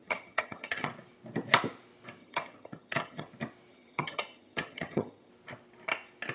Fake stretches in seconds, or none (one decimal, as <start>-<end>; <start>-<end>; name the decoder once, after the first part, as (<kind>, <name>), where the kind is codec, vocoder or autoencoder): 0.0-0.9 (vocoder, HiFi-GAN); 2.2-3.3; 3.7-5.3